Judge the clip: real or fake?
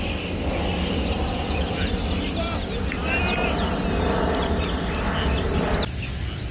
real